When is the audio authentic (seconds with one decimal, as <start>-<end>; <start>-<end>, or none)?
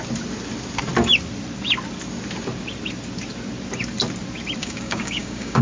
0.0-4.6